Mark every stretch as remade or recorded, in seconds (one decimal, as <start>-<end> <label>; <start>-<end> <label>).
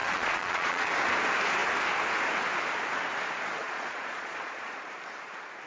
0.0-0.9 remade; 0.9-3.6 recorded; 3.6-4.9 remade; 4.9-5.7 recorded